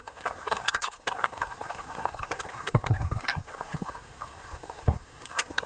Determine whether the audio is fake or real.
fake